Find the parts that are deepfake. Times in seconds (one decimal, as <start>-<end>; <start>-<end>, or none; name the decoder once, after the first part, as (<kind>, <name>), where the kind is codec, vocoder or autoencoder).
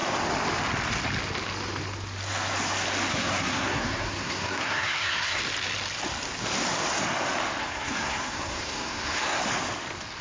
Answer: 3.1-5.4 (codec, SNAC); 7.6-9.4